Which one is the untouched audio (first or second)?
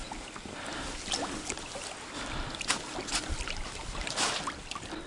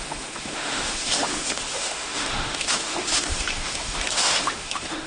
first